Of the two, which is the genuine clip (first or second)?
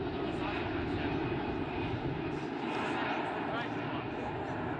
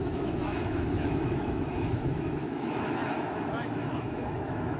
first